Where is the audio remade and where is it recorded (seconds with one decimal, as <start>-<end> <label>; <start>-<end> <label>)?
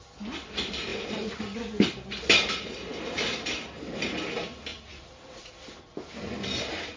0.0-4.7 recorded; 4.7-5.5 remade; 5.5-7.0 recorded